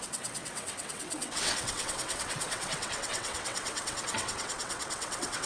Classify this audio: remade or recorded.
remade